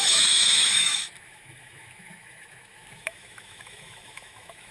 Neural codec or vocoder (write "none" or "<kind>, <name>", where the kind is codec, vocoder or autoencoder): autoencoder, DAC-VAE